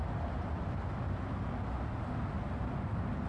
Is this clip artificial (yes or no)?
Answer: no